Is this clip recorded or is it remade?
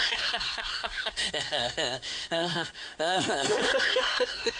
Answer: remade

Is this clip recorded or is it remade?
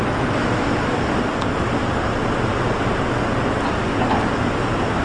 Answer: recorded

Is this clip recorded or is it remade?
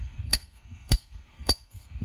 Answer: remade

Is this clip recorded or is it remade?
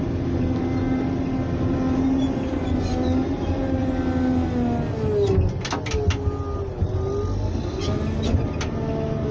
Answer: recorded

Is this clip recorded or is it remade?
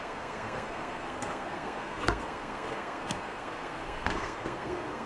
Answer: remade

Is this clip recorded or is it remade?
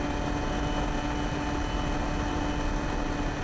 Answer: recorded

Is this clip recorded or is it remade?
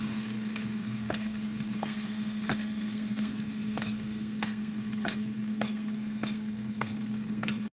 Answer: remade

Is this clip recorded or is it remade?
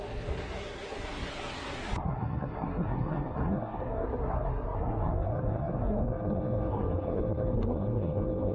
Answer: remade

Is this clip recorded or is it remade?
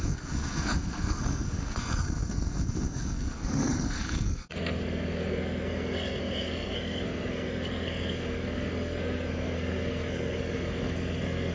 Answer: remade